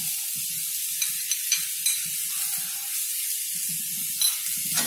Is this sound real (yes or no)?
yes